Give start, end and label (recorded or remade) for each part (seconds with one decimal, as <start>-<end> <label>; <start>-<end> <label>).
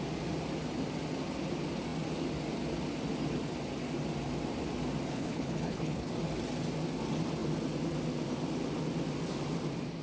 0.0-5.1 recorded; 5.1-6.1 remade; 6.1-10.0 recorded